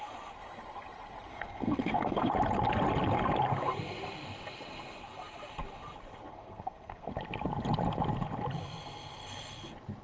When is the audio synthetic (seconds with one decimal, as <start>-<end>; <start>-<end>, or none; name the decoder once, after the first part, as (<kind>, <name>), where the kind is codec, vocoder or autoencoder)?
1.3-2.3 (codec, SNAC); 6.3-7.1